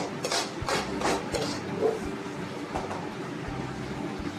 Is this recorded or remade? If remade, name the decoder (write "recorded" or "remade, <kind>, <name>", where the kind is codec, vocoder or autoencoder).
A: recorded